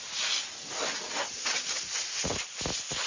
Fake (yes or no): no